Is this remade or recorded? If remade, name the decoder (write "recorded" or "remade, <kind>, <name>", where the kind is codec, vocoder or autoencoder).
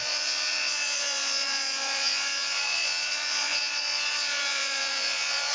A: remade, vocoder, Vocos